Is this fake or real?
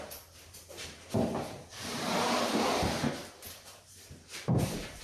fake